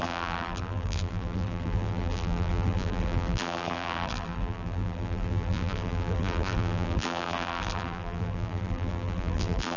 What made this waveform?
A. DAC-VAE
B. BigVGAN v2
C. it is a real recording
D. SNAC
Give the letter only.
B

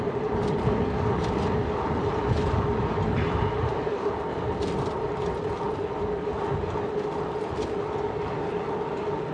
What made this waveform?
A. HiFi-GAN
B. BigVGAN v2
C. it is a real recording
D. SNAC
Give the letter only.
C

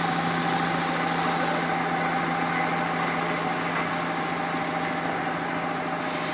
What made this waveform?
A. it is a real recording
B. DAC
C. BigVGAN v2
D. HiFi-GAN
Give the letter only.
A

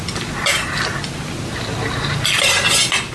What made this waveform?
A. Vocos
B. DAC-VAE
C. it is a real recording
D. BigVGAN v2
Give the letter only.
C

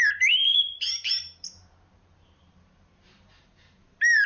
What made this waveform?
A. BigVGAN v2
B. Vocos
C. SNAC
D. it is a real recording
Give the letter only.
A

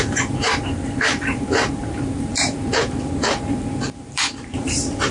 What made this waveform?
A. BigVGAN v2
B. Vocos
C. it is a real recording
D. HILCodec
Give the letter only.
A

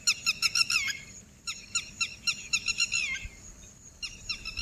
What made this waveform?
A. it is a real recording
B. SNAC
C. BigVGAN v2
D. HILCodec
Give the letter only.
A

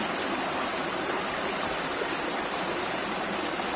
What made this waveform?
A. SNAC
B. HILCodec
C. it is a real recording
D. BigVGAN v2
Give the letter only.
C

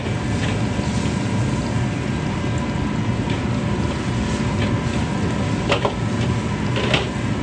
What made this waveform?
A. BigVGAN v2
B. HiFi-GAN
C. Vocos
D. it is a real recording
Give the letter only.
D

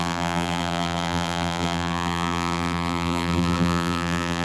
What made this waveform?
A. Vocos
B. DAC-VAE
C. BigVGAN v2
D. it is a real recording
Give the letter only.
C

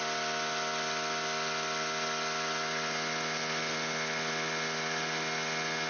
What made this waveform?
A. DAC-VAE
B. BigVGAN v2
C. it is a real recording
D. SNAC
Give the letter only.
C